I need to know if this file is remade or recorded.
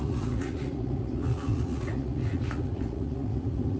remade